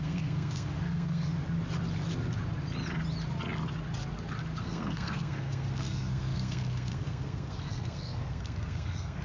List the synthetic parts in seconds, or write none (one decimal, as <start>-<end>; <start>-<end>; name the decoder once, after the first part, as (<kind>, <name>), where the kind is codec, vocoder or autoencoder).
0.0-1.3 (codec, SNAC); 4.6-9.2